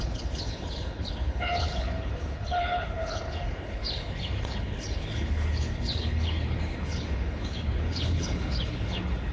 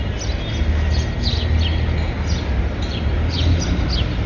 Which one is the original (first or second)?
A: second